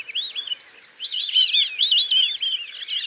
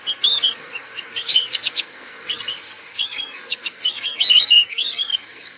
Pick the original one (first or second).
first